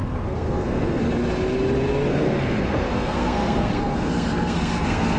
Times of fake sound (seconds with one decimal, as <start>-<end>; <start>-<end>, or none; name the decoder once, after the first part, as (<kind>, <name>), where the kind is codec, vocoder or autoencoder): 0.0-1.0 (codec, SNAC); 2.1-5.2